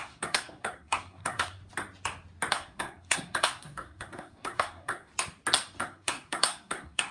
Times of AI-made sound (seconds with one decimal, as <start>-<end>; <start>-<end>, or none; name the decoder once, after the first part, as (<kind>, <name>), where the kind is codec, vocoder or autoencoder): 0.0-1.6 (codec, SNAC); 2.5-5.1; 5.8-7.1